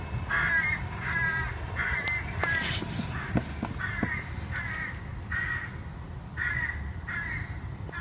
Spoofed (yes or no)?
no